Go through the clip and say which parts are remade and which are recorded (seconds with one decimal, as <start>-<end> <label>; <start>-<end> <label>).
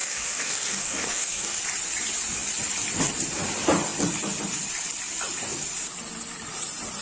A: 0.0-1.6 remade; 1.6-7.0 recorded